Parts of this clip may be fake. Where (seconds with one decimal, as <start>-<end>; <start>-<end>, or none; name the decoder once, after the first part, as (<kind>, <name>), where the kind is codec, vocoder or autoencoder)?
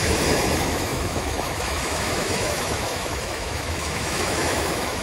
0.0-5.0 (autoencoder, DAC-VAE)